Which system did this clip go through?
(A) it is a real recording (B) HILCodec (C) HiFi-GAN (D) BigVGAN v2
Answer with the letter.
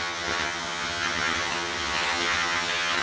C